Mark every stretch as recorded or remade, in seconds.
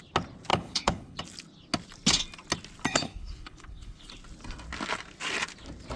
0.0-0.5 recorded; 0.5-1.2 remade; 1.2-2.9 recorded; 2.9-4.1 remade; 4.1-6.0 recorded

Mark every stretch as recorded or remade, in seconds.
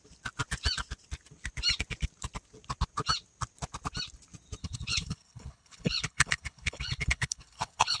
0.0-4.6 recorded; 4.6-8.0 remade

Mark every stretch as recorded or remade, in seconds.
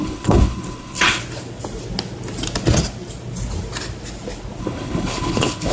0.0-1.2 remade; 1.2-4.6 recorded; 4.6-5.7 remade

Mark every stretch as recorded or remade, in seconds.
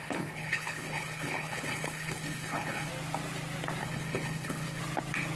0.0-2.9 remade; 2.9-3.8 recorded; 3.8-4.8 remade; 4.8-5.4 recorded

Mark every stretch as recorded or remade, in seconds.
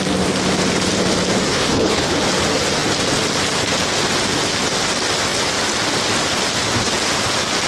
0.0-1.5 recorded; 1.5-2.2 remade; 2.2-7.7 recorded